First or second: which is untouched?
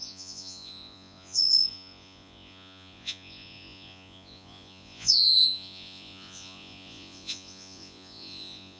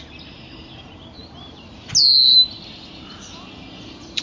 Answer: second